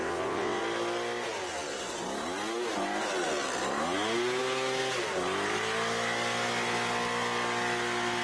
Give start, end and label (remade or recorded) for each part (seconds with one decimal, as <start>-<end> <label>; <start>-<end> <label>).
0.0-0.6 remade; 0.6-8.2 recorded